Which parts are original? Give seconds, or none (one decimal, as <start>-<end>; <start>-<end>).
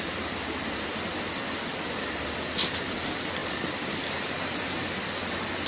0.0-5.7